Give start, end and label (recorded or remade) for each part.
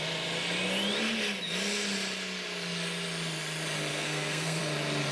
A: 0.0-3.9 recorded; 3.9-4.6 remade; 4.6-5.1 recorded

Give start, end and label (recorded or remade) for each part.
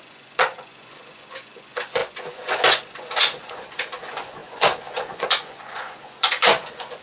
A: 0.0-7.0 remade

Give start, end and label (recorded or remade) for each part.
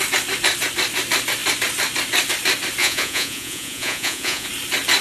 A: 0.0-2.8 recorded; 2.8-4.5 remade; 4.5-5.0 recorded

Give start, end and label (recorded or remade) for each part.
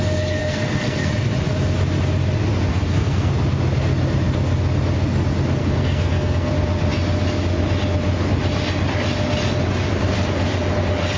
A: 0.0-0.4 recorded; 0.4-1.1 remade; 1.1-2.7 recorded; 2.7-3.3 remade; 3.3-5.6 recorded; 5.6-6.5 remade; 6.5-11.2 recorded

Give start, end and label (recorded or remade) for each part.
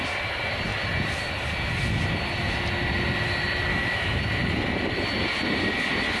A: 0.0-3.7 recorded; 3.7-4.2 remade; 4.2-6.2 recorded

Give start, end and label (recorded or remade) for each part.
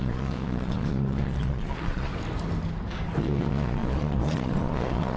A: 0.0-2.1 remade; 2.1-3.2 recorded; 3.2-5.2 remade